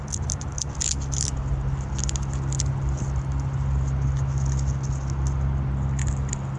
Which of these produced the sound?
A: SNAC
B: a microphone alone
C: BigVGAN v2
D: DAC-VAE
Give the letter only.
B